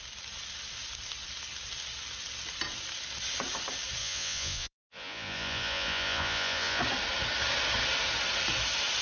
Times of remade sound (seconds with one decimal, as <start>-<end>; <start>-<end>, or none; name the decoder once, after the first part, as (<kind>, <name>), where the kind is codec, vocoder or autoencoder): 4.0-6.8 (vocoder, Vocos)